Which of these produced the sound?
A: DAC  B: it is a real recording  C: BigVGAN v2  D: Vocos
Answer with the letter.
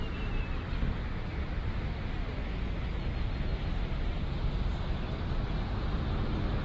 B